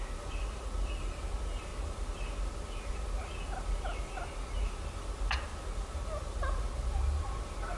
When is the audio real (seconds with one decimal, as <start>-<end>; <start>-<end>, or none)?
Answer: 0.0-7.8